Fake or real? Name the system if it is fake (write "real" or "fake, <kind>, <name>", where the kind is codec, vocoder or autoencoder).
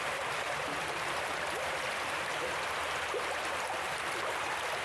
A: fake, vocoder, BigVGAN v2